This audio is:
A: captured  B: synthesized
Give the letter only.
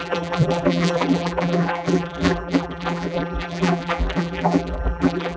B